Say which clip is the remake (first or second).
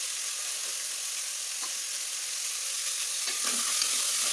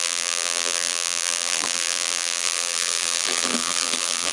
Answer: second